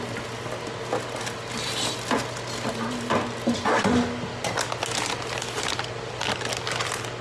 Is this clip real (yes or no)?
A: yes